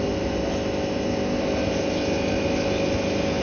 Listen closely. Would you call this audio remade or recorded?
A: recorded